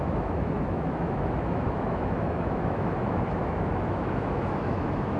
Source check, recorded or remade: remade